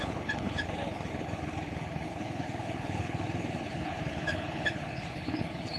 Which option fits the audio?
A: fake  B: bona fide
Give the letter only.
A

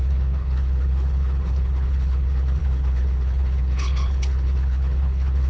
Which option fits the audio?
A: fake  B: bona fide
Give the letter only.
A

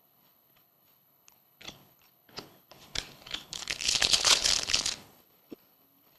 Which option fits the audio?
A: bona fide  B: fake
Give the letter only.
B